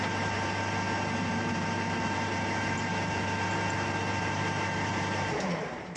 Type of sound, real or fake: fake